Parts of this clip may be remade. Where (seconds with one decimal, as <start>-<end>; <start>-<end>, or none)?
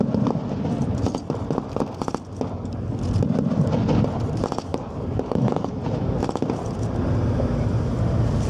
4.7-5.7